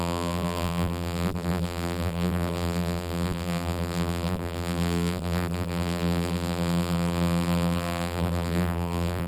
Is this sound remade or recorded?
remade